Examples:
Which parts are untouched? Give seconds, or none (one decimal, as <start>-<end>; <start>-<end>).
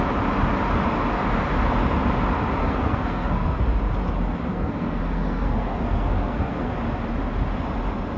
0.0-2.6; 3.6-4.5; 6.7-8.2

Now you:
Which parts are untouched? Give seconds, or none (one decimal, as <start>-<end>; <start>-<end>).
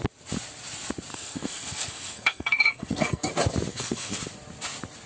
0.0-1.1; 3.3-3.7; 4.2-5.1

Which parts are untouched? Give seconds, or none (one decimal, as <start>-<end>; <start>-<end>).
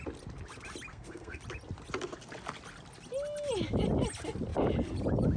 0.0-0.9; 1.4-5.4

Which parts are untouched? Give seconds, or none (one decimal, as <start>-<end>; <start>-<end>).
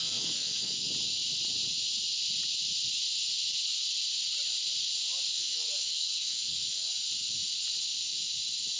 0.9-5.3; 6.9-8.8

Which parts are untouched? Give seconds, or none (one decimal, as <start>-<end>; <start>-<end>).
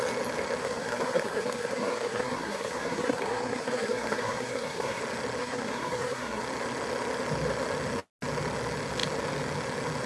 0.0-0.6; 5.0-5.4; 6.4-10.1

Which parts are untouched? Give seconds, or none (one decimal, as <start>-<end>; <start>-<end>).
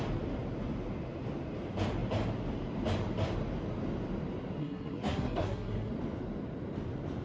0.0-4.6; 5.9-7.2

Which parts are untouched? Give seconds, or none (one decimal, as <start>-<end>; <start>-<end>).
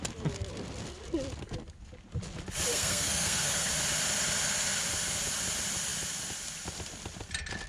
0.0-2.7; 3.7-7.7